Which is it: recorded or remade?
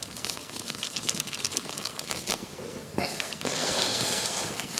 remade